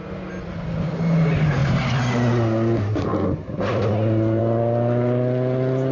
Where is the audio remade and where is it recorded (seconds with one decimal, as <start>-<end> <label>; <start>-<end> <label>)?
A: 0.0-5.9 recorded